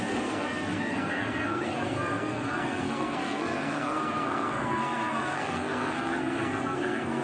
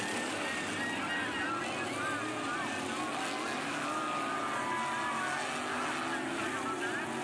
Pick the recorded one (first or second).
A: second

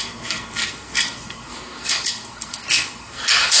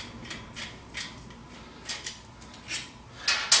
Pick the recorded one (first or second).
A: second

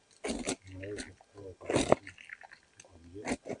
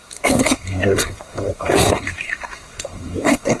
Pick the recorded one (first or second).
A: first